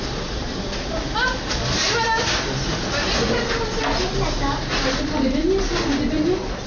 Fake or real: real